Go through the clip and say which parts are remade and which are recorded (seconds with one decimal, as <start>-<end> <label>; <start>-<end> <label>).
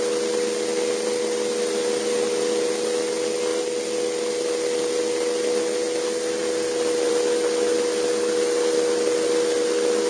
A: 0.0-10.1 recorded